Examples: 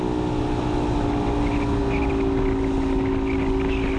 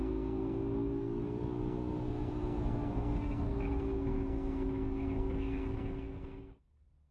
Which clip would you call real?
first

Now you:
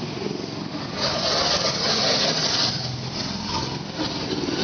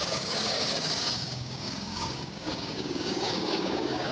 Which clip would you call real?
first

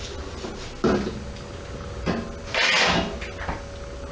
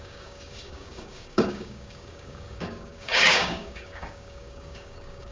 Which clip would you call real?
first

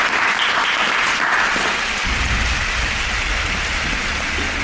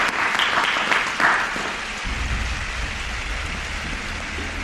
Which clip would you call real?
second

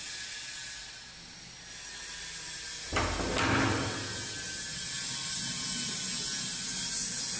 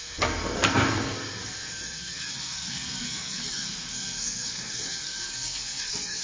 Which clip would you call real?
first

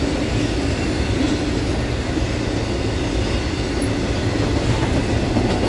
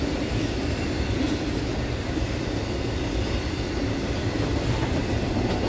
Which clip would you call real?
first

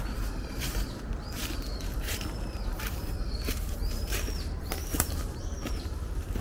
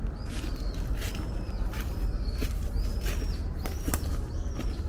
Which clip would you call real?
second